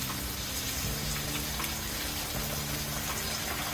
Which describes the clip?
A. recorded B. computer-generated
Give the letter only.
A